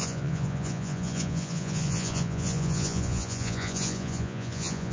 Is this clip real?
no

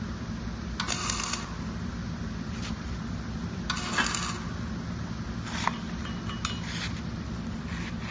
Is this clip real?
yes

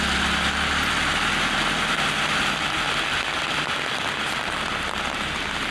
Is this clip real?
yes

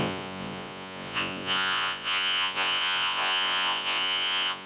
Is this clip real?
no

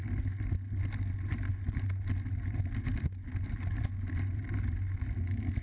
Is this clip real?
yes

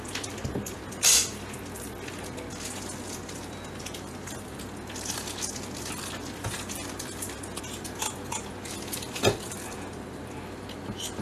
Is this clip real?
yes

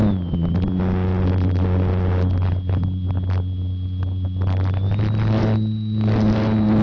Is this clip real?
yes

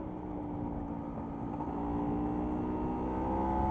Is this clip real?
yes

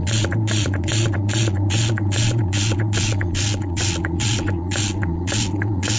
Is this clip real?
no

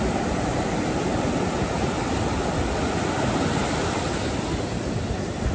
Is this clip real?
yes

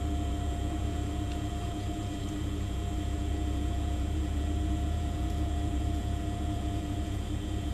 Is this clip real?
no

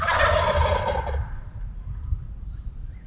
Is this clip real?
yes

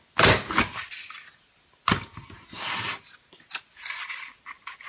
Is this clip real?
yes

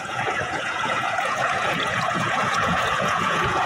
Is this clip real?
no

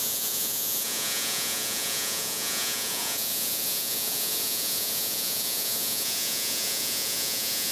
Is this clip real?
no